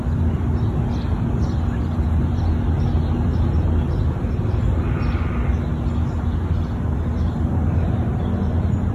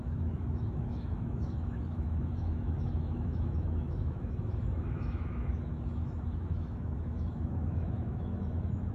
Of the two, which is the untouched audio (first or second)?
first